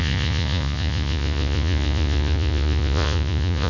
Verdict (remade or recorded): remade